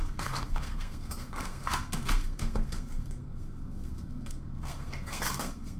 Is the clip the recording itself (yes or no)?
no